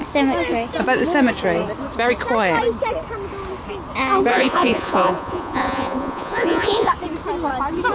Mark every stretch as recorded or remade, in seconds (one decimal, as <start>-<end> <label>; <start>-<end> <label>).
0.0-4.3 recorded; 4.3-6.9 remade; 6.9-7.9 recorded